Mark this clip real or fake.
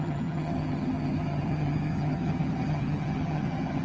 fake